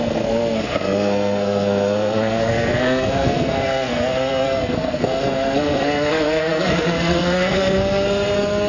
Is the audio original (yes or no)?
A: no